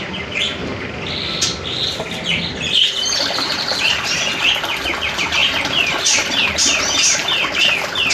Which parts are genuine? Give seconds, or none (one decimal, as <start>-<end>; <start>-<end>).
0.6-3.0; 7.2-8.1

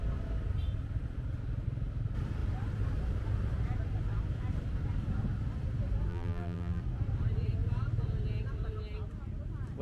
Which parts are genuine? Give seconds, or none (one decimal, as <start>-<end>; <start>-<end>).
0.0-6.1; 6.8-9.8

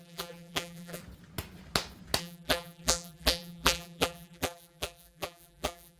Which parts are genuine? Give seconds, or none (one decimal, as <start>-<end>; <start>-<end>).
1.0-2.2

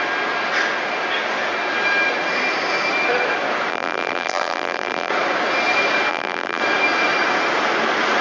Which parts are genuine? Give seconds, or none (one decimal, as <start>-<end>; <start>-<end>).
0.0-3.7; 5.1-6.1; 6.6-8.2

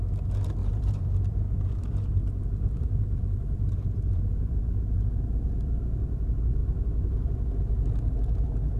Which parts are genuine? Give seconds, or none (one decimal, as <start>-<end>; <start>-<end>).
0.0-0.6; 5.8-8.8

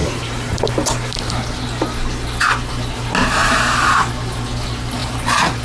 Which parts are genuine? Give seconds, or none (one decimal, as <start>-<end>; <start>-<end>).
0.7-3.4; 4.1-5.6

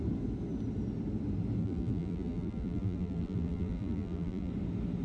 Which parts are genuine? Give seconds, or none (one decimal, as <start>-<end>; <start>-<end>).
0.0-1.6; 4.5-5.0